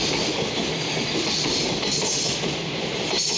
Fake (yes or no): no